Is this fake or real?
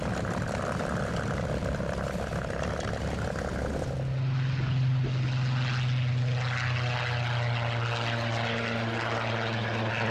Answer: real